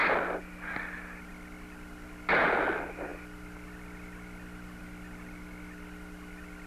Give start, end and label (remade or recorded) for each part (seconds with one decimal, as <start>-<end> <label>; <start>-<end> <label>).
0.0-6.7 recorded